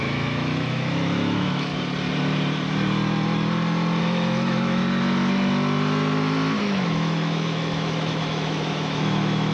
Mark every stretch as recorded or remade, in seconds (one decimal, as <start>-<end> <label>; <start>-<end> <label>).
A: 0.0-1.7 remade; 1.7-4.0 recorded; 4.0-4.8 remade; 4.8-6.6 recorded; 6.6-9.5 remade

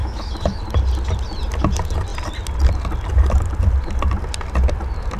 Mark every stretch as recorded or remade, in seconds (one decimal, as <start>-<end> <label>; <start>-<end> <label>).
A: 0.0-0.6 remade; 0.6-5.2 recorded

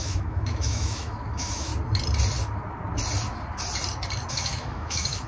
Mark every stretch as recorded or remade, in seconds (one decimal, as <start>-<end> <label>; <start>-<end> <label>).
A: 0.0-1.7 remade; 1.7-4.3 recorded; 4.3-5.3 remade

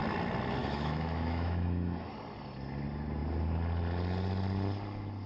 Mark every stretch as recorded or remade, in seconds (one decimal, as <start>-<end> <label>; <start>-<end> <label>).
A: 0.0-0.6 recorded; 0.6-2.1 remade; 2.1-5.3 recorded

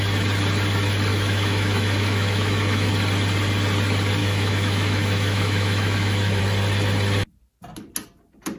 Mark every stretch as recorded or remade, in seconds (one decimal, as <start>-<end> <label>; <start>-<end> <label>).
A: 0.0-1.1 recorded; 1.1-2.9 remade; 2.9-4.2 recorded; 4.2-6.4 remade; 6.4-8.6 recorded